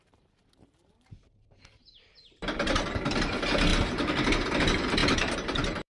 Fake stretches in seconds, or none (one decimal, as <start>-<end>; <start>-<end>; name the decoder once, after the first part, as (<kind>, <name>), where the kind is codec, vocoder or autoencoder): 0.0-5.9 (vocoder, BigVGAN v2)